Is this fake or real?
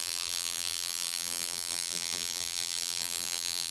fake